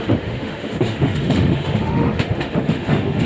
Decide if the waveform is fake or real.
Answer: fake